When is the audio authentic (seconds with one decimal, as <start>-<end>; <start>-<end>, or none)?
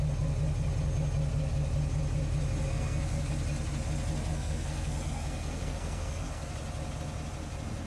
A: 0.0-2.7; 3.3-4.3; 6.5-7.9